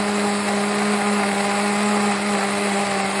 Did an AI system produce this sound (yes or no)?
no